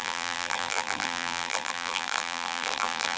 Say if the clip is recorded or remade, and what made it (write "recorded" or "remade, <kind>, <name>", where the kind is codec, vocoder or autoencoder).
remade, vocoder, BigVGAN v2